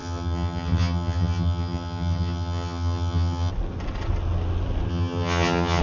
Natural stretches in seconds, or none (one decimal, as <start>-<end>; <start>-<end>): 3.5-4.9